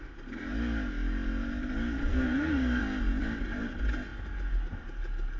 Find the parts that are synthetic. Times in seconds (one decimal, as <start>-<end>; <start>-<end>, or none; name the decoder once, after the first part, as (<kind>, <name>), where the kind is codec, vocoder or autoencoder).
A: 2.1-2.8 (codec, SNAC)